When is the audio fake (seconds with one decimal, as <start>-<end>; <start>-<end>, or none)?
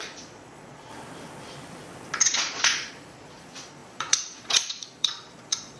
0.0-0.9; 2.2-5.8